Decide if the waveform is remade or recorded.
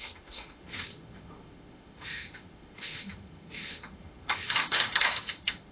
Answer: remade